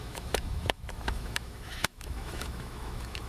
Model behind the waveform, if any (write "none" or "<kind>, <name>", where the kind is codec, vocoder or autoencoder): autoencoder, DAC-VAE